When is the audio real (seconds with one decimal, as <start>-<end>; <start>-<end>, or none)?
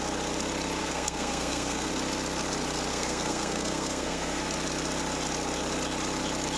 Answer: 0.0-0.8; 1.9-2.9; 4.4-6.6